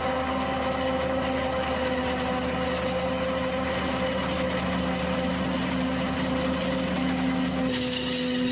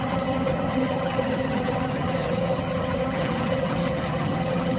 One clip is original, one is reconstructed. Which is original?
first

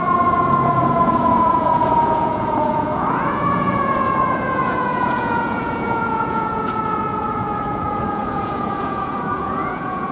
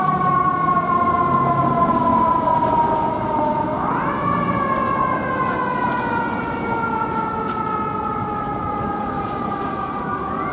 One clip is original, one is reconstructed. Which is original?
second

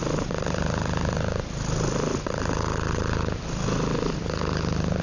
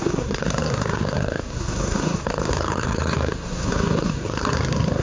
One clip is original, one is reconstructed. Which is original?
first